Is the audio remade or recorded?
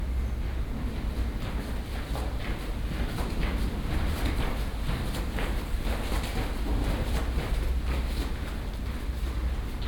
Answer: recorded